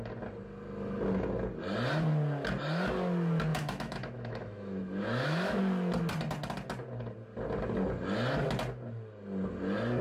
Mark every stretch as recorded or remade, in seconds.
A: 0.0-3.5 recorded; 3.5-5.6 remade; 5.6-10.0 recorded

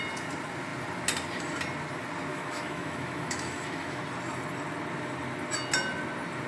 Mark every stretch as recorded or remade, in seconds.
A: 0.0-2.3 recorded; 2.3-4.0 remade; 4.0-6.5 recorded

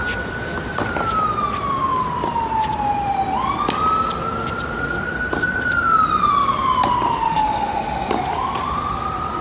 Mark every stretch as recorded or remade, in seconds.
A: 0.0-7.3 recorded; 7.3-8.1 remade; 8.1-9.4 recorded

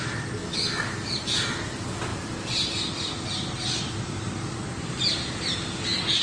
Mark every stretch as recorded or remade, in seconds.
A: 0.0-6.2 recorded